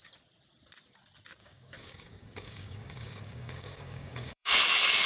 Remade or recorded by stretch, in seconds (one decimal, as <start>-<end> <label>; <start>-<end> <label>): 0.0-1.4 recorded; 1.4-4.5 remade; 4.5-5.1 recorded